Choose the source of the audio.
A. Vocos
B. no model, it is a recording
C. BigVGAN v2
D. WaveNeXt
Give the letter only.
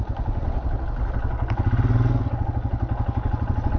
B